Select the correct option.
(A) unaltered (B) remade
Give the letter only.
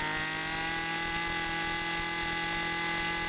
A